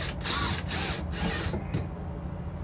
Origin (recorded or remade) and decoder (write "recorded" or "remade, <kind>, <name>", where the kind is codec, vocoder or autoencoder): recorded